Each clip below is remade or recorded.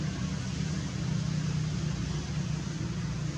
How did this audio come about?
recorded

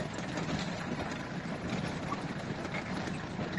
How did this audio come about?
recorded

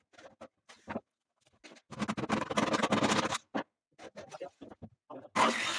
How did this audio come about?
recorded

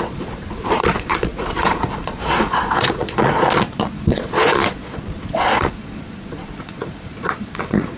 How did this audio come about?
remade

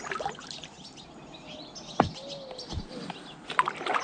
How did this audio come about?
recorded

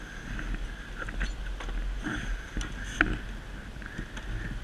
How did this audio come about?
recorded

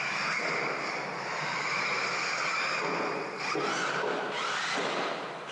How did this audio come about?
recorded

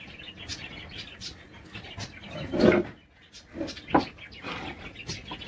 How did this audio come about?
recorded